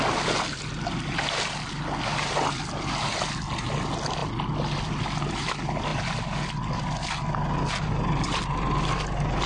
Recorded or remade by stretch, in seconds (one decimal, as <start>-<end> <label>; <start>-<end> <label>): 0.0-9.5 recorded